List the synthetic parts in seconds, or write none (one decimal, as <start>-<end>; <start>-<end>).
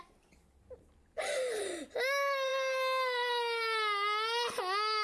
none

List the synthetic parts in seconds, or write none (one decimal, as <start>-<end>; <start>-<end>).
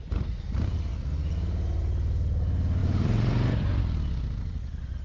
2.8-3.8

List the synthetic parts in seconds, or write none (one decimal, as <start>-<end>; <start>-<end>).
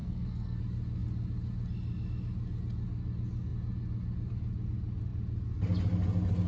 0.0-0.6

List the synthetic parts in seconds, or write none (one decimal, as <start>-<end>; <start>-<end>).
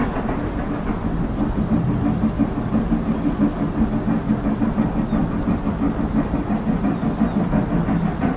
none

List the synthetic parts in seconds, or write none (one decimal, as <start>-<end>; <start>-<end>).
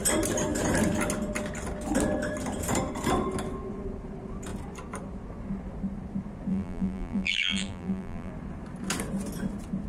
6.5-8.3